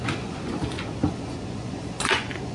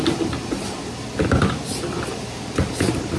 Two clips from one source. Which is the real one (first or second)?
second